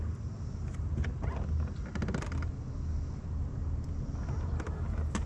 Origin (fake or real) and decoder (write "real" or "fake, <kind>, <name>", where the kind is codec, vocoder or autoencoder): real